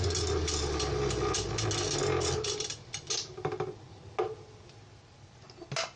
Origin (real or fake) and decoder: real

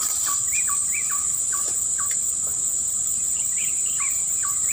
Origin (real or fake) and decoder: real